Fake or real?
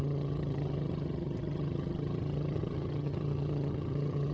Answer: fake